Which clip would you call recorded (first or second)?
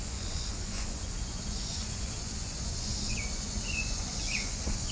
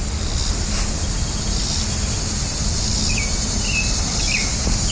second